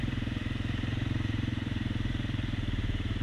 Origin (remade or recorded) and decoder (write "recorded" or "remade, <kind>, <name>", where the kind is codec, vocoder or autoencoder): remade, vocoder, BigVGAN v2